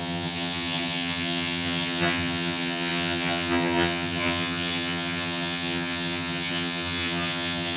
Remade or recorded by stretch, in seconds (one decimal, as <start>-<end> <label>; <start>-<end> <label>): 0.0-7.8 remade